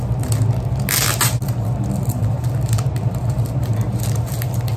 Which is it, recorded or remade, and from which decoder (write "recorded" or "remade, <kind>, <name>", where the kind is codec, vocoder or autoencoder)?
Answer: recorded